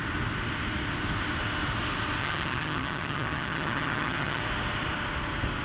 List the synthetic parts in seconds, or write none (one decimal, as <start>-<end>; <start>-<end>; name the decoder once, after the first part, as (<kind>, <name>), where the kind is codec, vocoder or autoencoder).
2.2-4.4 (vocoder, HiFi-GAN)